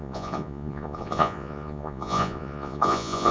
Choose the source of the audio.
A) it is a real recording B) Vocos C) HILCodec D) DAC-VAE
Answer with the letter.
B